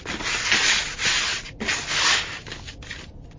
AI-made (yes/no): no